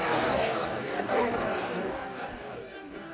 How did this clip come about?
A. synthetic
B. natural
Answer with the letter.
A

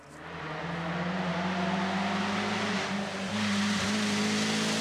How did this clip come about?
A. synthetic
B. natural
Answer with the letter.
B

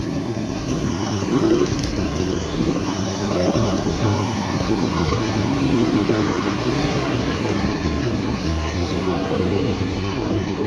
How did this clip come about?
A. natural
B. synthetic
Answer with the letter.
B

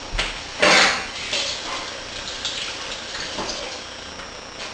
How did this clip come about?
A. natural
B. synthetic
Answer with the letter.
A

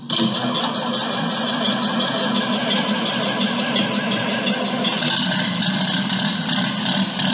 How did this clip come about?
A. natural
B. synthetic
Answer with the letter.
A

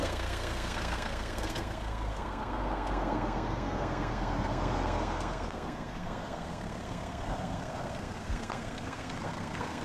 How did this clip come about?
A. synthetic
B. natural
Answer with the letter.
A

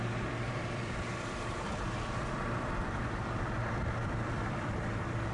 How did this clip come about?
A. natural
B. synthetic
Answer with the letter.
B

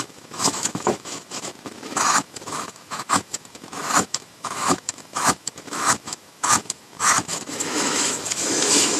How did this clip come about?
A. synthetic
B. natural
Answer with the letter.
A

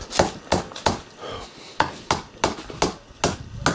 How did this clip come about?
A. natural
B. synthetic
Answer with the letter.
A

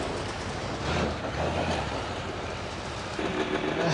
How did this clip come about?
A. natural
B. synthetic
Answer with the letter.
B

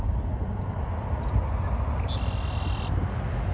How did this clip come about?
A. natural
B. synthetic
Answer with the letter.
A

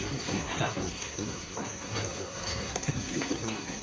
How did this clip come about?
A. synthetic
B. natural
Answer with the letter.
A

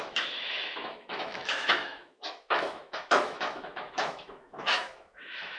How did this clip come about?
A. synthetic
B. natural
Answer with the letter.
A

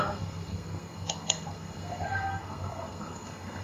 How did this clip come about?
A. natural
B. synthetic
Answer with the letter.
B